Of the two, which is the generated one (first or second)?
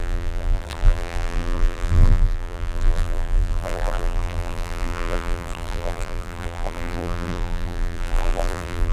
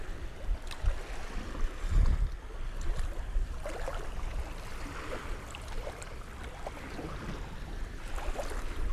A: first